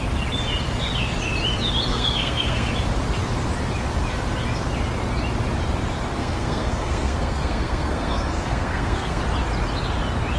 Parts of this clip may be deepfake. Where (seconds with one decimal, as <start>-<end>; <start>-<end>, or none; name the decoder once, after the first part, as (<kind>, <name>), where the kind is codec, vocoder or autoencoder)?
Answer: 1.9-2.7 (codec, SNAC); 6.2-9.2